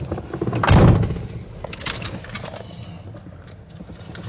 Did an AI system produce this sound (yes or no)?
no